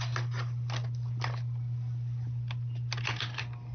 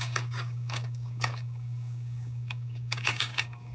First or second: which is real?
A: first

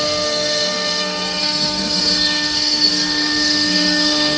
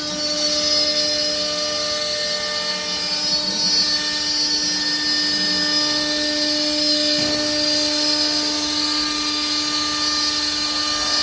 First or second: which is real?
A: second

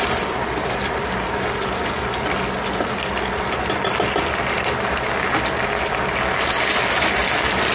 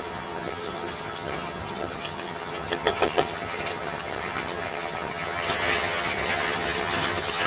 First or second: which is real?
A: first